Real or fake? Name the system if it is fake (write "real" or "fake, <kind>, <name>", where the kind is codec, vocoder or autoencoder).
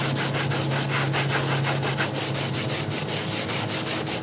real